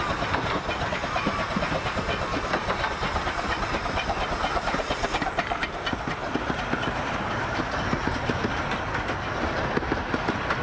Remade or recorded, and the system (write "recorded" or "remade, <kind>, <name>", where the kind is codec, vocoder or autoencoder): recorded